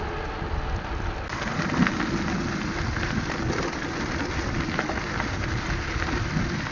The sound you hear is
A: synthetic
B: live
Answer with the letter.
B